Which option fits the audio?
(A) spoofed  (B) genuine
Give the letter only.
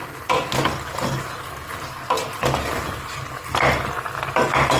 B